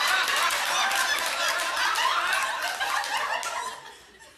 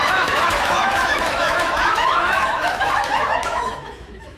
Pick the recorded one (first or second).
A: first